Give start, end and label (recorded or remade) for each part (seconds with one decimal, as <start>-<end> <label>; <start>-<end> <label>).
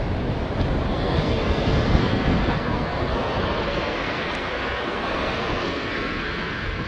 0.0-0.9 recorded; 0.9-6.9 remade